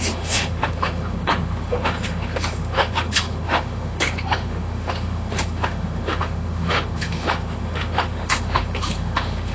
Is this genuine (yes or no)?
no